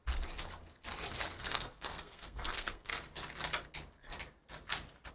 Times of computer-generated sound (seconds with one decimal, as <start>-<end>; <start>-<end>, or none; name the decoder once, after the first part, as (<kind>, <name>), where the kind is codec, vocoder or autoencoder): 1.4-2.9 (codec, SNAC)